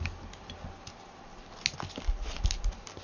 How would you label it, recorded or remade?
recorded